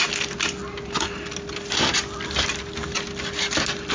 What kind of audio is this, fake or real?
real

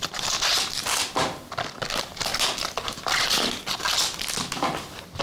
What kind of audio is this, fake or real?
real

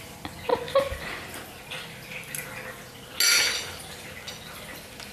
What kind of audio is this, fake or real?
real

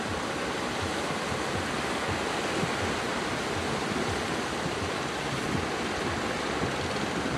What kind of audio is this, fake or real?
real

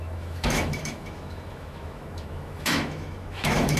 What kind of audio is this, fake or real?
fake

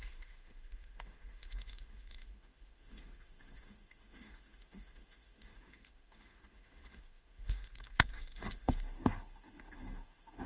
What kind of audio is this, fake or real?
fake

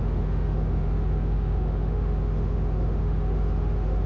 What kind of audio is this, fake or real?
fake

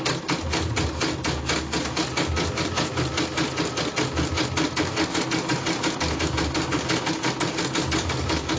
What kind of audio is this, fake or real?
real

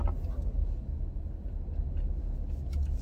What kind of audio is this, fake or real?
real